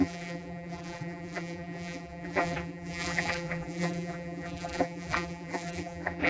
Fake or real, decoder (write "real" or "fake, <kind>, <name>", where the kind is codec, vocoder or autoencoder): fake, vocoder, BigVGAN v2